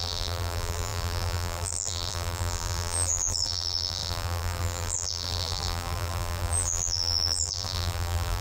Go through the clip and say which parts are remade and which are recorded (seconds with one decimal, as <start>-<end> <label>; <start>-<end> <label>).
0.0-8.4 remade